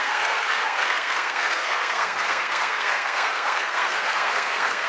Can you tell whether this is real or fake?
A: fake